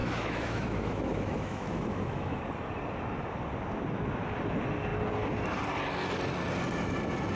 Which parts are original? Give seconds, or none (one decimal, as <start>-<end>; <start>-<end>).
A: 2.4-7.4